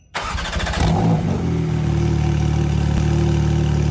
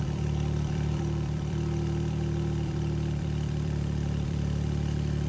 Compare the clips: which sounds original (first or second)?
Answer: first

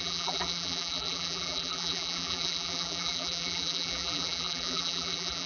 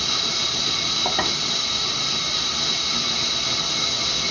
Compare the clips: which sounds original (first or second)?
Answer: second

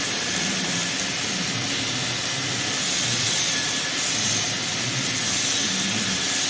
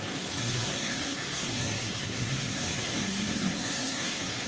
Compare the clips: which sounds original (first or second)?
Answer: first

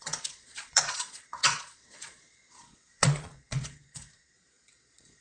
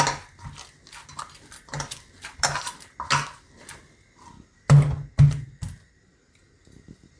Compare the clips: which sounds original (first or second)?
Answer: second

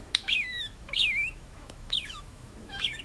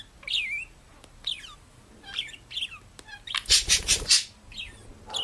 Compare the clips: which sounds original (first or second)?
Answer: second